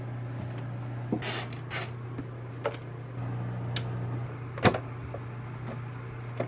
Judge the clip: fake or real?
real